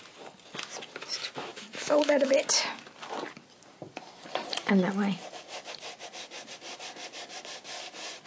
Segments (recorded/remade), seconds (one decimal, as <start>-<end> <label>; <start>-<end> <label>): 0.0-1.5 recorded; 1.5-2.4 remade; 2.4-8.3 recorded